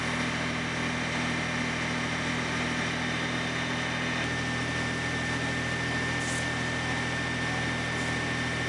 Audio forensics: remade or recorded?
recorded